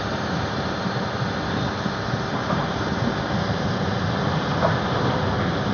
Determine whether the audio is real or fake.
real